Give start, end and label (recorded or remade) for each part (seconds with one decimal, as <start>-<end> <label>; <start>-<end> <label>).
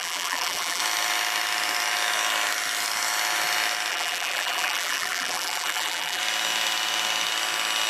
0.0-0.8 remade; 0.8-3.9 recorded; 3.9-6.2 remade; 6.2-7.9 recorded